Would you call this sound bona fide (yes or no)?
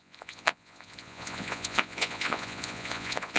no